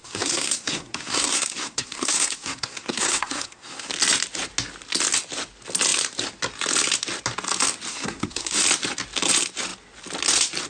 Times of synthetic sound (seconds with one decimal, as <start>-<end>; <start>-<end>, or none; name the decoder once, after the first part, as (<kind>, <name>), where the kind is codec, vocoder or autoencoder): 0.0-3.9 (codec, SNAC); 7.9-8.6